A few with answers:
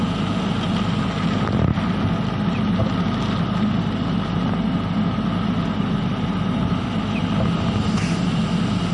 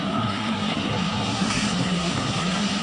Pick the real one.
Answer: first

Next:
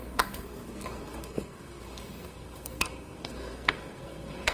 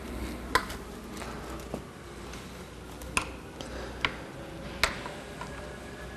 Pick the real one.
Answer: second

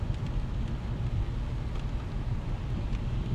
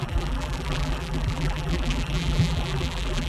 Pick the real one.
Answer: first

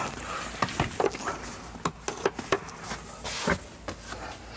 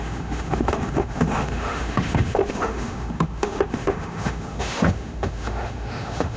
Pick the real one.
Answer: first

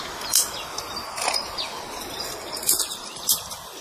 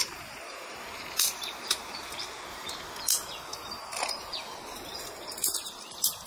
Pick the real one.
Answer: second